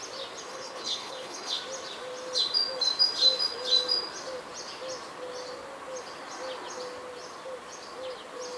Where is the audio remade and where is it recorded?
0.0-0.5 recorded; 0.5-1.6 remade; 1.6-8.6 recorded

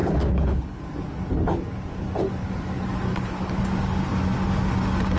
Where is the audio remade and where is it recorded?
0.0-0.8 remade; 0.8-3.1 recorded; 3.1-3.6 remade; 3.6-5.2 recorded

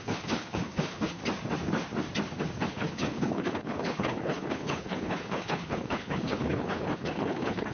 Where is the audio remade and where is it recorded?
0.0-1.2 remade; 1.2-2.7 recorded; 2.7-7.7 remade

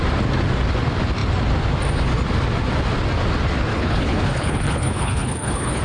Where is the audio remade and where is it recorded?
0.0-3.7 recorded; 3.7-5.8 remade

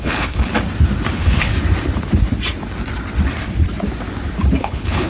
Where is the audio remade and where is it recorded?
0.0-0.5 remade; 0.5-1.1 recorded; 1.1-1.5 remade; 1.5-4.6 recorded; 4.6-5.1 remade